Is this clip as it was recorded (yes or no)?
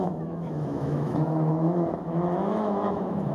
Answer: no